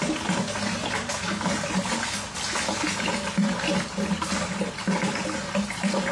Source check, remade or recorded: recorded